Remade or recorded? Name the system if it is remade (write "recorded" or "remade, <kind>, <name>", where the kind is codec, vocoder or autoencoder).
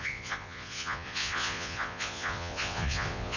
remade, vocoder, Vocos